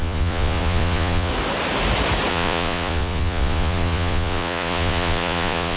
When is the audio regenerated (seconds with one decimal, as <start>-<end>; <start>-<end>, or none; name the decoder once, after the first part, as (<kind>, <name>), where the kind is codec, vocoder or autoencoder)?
0.0-1.3 (vocoder, Vocos); 2.3-5.8